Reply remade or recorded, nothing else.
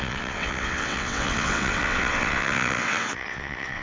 remade